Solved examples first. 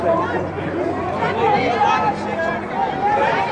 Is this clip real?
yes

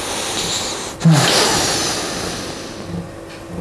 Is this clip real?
yes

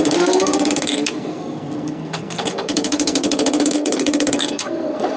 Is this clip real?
no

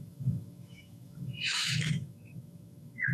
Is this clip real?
no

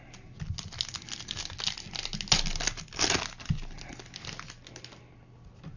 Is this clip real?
yes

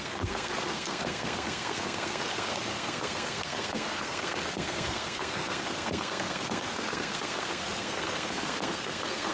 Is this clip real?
no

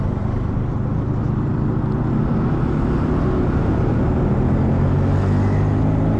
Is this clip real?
yes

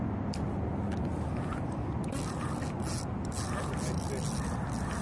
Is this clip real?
yes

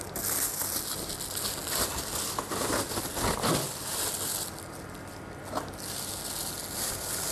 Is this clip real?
yes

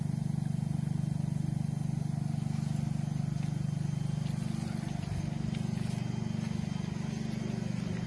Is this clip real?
yes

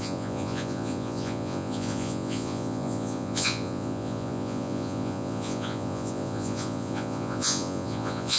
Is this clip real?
no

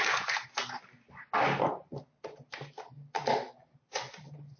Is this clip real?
yes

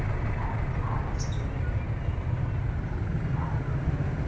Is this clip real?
yes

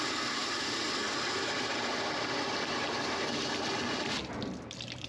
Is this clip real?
yes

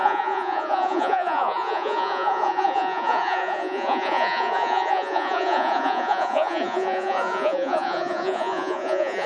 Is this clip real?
no